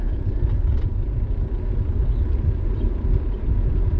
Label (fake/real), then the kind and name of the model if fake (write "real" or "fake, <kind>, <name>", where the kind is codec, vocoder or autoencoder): real